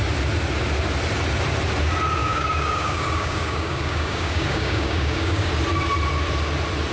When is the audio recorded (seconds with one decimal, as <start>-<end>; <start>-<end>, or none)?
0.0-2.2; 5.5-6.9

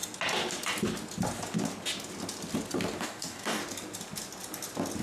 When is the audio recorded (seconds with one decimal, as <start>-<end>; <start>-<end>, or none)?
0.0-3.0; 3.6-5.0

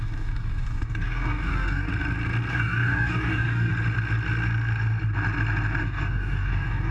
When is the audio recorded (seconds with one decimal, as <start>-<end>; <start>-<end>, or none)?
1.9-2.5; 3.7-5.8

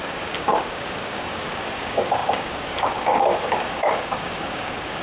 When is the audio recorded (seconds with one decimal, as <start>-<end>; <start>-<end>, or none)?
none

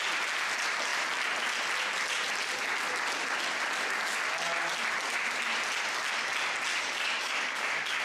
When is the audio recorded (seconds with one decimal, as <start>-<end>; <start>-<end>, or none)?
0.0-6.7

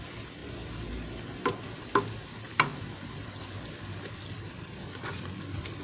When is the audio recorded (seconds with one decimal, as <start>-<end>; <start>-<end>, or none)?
0.0-5.8

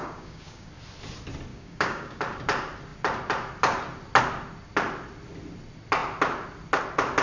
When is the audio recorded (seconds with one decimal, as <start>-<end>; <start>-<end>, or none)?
0.7-1.5; 2.2-7.2

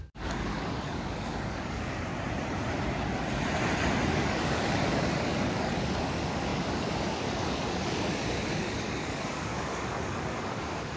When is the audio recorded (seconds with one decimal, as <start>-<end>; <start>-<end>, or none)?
2.1-4.1